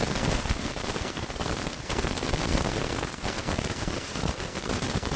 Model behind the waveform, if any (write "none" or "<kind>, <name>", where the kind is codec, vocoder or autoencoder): codec, SNAC